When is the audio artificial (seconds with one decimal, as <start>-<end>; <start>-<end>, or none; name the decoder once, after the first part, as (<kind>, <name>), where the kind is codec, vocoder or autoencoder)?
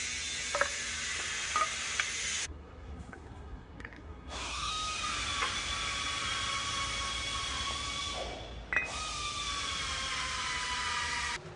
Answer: 2.4-4.7 (codec, SNAC)